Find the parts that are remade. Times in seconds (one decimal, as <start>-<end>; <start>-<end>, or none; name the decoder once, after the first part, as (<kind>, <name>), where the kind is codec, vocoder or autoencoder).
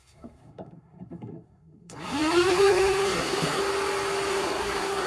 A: 0.0-3.6 (codec, SNAC); 4.3-5.1